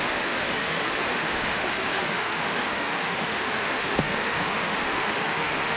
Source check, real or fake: fake